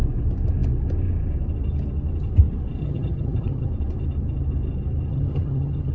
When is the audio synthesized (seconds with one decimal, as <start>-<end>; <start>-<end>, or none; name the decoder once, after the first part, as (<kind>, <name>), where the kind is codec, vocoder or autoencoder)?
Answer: 2.8-3.7 (vocoder, HiFi-GAN); 5.1-5.9